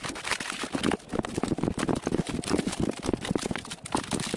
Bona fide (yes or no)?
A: yes